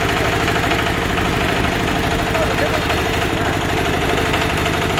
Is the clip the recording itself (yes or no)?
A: yes